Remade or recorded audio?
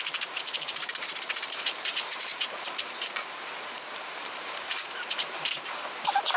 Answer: remade